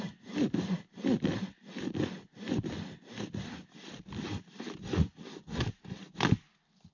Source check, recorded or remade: recorded